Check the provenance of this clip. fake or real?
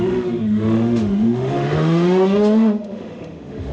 fake